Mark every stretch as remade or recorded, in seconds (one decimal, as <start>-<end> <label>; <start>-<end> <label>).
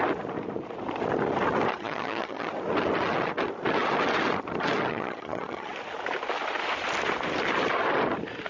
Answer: 0.0-1.7 recorded; 1.7-2.5 remade; 2.5-4.9 recorded; 4.9-5.7 remade; 5.7-8.5 recorded